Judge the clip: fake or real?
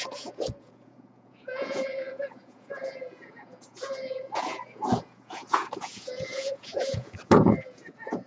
fake